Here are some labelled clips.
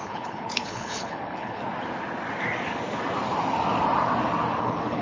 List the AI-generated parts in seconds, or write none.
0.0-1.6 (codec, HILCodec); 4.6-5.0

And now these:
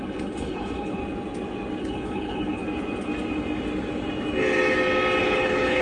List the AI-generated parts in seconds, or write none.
0.0-1.0 (codec, HILCodec); 1.8-2.6; 5.2-5.8

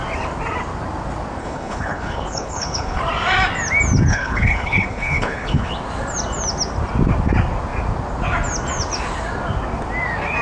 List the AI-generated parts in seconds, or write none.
1.4-3.0 (codec, HILCodec); 4.1-5.7

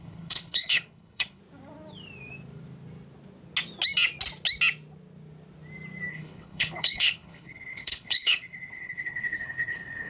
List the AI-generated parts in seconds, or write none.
0.0-1.4 (codec, HILCodec); 6.1-10.1

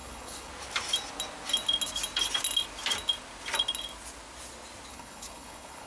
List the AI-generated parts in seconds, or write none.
0.0-0.5 (codec, HILCodec); 4.9-5.9